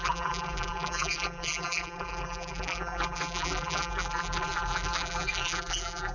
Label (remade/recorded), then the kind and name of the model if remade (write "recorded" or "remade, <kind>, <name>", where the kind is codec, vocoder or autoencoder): remade, vocoder, BigVGAN v2